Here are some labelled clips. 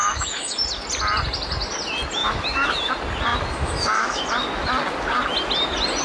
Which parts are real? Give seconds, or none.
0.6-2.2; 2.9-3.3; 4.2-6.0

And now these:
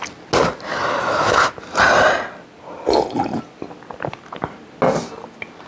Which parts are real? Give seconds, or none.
0.0-5.7

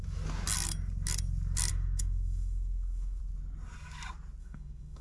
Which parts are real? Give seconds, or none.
0.0-1.7; 3.2-4.4

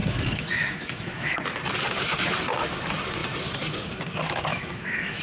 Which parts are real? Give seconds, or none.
1.4-4.5